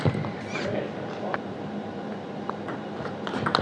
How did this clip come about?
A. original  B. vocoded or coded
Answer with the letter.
A